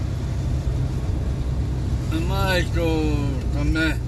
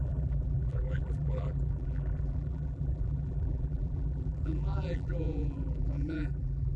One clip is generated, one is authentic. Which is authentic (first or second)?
first